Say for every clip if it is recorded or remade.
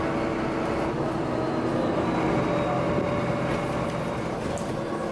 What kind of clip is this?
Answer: recorded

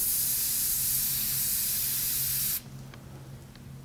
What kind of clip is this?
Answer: recorded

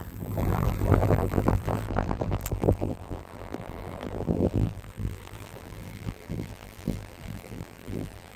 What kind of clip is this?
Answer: remade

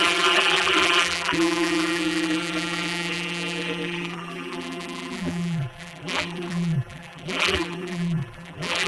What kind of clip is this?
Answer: remade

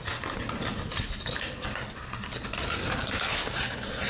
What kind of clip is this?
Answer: recorded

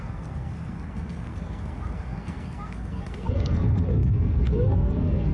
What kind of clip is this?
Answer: remade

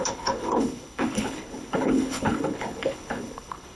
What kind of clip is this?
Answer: remade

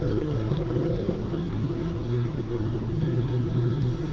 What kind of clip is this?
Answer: remade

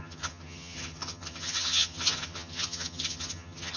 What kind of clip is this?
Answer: remade